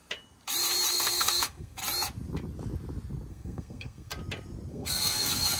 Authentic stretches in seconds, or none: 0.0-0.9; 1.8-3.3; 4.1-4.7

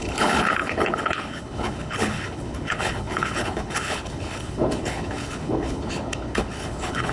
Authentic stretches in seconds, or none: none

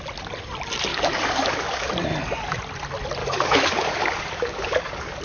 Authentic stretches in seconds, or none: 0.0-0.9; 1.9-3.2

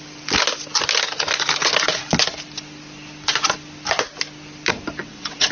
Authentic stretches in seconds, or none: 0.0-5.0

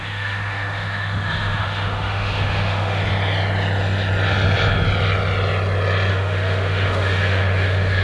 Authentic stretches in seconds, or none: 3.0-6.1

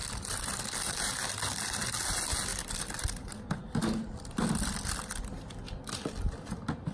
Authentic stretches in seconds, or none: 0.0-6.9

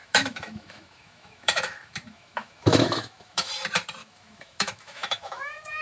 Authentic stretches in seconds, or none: 3.5-4.0